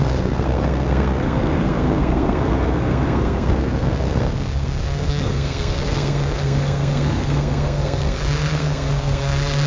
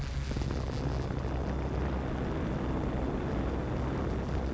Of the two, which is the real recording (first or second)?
second